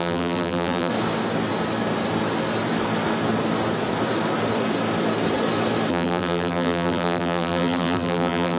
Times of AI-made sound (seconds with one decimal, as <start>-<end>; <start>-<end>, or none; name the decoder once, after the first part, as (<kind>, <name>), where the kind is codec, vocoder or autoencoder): 0.0-0.9 (vocoder, BigVGAN v2); 5.9-8.6